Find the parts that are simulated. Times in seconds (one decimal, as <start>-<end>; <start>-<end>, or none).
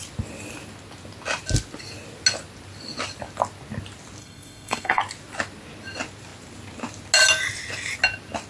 4.2-5.0